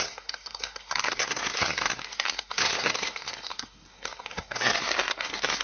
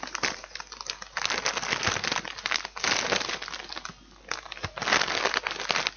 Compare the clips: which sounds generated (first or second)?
first